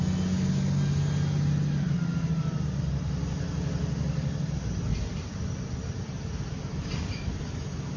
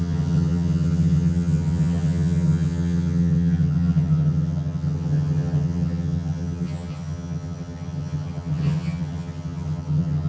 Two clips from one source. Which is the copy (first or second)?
second